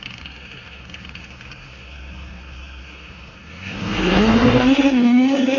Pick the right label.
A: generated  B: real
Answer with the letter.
A